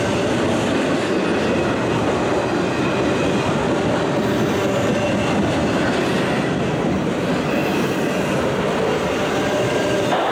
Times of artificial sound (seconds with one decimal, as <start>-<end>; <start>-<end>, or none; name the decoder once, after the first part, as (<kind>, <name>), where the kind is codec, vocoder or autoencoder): none